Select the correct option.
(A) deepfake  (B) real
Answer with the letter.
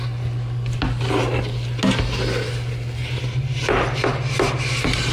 B